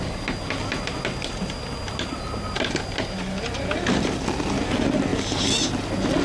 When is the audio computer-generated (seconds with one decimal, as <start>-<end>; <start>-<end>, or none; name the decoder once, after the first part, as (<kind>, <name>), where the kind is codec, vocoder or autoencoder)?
none